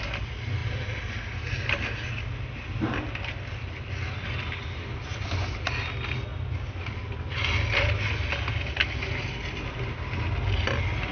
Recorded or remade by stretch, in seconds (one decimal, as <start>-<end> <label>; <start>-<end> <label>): 0.0-11.1 recorded